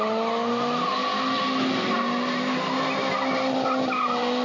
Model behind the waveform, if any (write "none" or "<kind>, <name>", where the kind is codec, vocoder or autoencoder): none